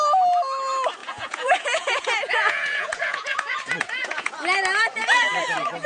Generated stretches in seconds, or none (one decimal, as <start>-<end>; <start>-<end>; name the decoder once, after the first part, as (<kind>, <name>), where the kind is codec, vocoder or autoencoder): 1.0-4.3 (vocoder, Vocos)